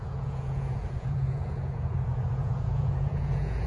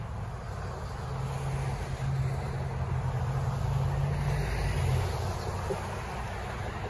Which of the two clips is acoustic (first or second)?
second